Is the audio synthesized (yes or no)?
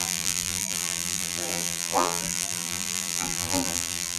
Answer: yes